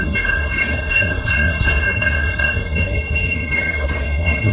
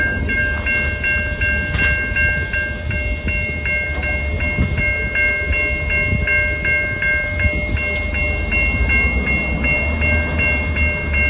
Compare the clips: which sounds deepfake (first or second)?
first